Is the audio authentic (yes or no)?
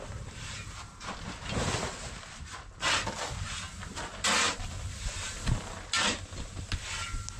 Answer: yes